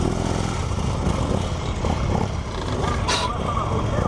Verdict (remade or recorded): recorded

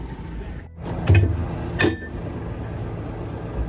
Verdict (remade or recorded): recorded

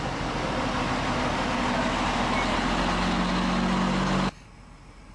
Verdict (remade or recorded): recorded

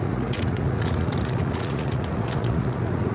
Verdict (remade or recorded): remade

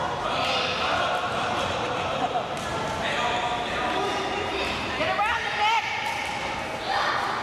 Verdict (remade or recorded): recorded